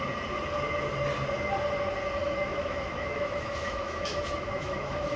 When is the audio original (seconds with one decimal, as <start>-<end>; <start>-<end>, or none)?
0.0-2.2